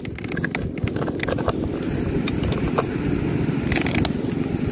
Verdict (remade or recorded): recorded